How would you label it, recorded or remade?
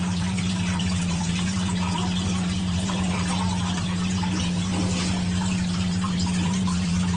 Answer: remade